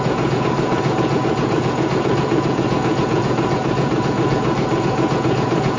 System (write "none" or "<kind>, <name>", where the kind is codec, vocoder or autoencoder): vocoder, Vocos